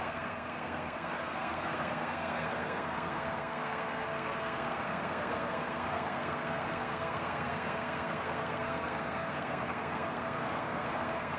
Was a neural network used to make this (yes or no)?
yes